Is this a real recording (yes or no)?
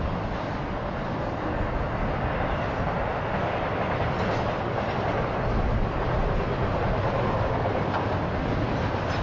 yes